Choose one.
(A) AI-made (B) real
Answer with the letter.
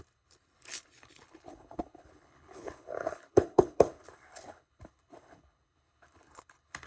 A